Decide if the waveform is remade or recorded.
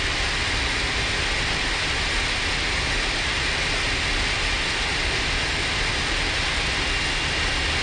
recorded